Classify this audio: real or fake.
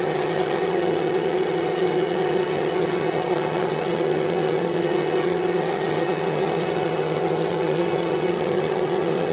fake